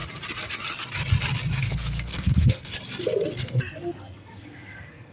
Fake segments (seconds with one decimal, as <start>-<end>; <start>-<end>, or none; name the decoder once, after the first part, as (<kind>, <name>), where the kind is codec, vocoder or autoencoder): 1.6-2.7 (codec, SNAC); 3.4-5.1

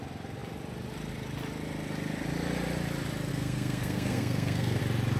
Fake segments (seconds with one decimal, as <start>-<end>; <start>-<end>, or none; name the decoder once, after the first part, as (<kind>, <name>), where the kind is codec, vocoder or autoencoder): 3.3-4.8 (codec, SNAC)

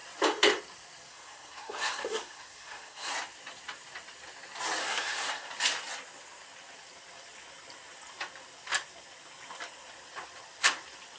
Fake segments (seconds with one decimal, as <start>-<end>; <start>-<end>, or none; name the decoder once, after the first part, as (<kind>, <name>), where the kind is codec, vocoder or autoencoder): 1.1-3.1 (codec, SNAC); 4.8-5.5

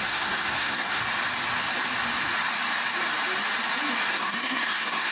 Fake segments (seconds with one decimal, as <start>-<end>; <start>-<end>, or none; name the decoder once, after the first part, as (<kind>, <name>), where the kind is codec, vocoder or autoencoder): 0.0-1.0 (codec, SNAC); 4.1-5.1

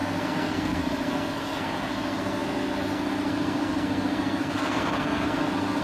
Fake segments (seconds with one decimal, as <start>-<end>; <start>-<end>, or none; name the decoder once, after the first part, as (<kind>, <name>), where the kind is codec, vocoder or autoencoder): 0.0-5.8 (codec, SNAC)

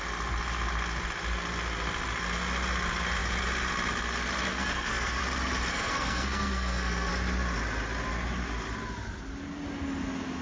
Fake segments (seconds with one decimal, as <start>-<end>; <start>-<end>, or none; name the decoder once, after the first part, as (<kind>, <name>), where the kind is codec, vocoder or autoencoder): 4.5-5.2 (codec, SNAC); 5.7-7.1